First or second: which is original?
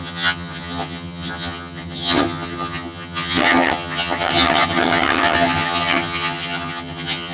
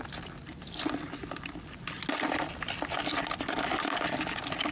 second